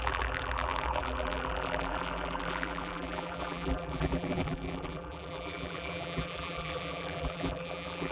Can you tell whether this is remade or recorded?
remade